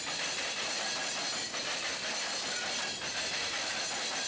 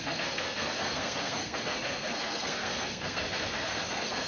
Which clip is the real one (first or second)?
first